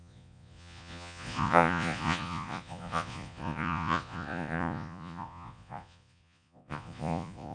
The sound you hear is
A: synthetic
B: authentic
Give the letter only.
A